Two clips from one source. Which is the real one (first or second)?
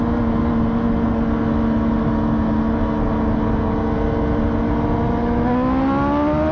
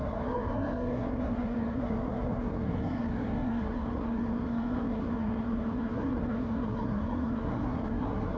first